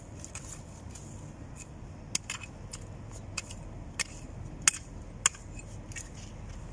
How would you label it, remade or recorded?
recorded